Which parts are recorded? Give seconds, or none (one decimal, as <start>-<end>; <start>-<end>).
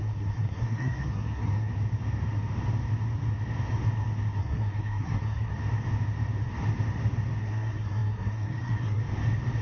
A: 1.7-4.4; 5.5-7.4; 9.0-9.6